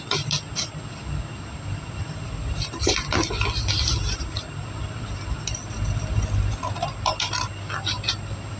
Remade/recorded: recorded